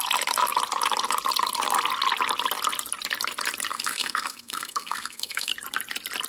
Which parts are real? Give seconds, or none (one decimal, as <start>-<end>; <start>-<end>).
0.0-3.7; 5.5-6.3